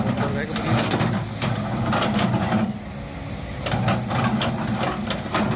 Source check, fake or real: real